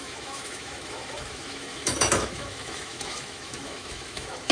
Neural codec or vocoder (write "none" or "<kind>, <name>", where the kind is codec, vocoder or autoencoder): autoencoder, DAC-VAE